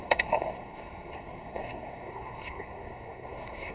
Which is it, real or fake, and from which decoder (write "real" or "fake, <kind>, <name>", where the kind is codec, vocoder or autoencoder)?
fake, codec, SNAC